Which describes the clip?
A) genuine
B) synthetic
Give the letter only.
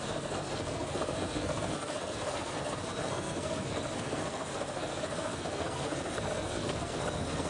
B